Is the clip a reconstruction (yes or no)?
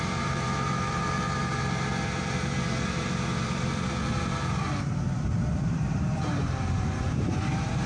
yes